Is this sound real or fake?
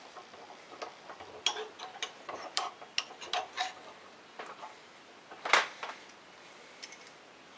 real